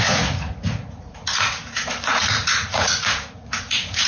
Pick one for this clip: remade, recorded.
remade